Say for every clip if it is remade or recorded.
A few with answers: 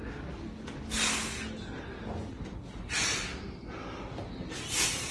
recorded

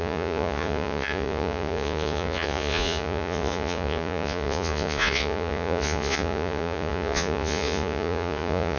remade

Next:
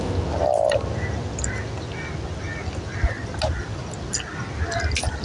recorded